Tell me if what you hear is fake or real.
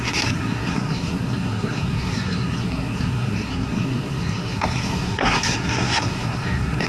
fake